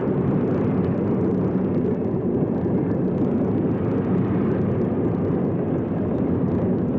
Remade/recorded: recorded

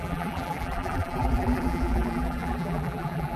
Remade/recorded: remade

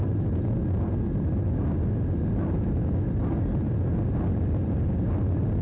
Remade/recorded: recorded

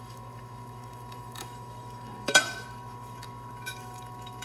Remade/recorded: remade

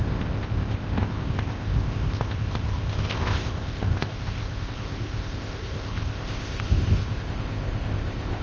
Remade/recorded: remade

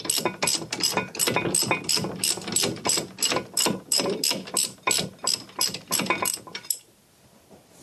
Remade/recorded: recorded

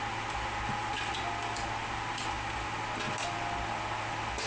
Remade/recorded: recorded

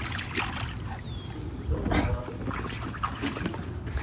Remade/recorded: recorded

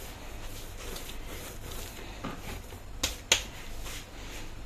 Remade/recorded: recorded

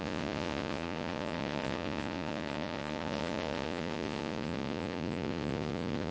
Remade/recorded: remade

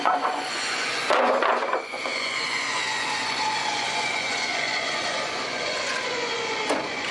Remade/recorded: remade